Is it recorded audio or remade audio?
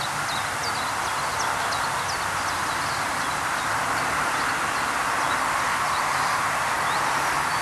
recorded